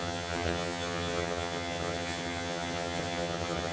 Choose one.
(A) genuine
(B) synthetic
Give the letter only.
B